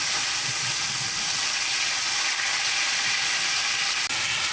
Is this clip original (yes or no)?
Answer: yes